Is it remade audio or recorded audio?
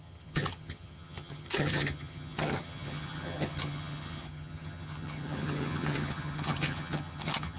remade